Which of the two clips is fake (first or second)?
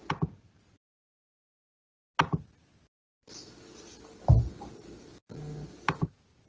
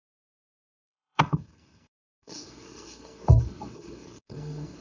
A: second